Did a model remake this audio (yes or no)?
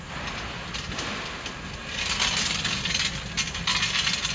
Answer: no